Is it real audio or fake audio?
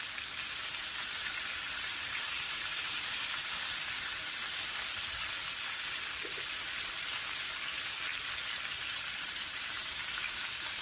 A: real